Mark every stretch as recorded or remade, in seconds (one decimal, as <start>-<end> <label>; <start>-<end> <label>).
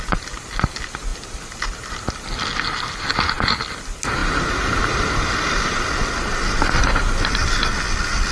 0.0-8.3 recorded